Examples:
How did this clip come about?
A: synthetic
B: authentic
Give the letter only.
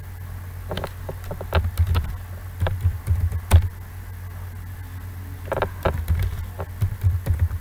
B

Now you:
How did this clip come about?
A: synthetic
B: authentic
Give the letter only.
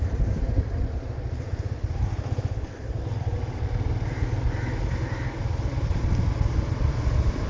B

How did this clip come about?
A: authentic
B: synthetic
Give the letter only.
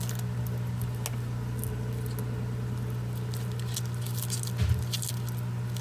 A